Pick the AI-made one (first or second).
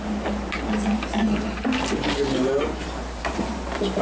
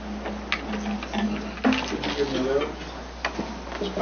first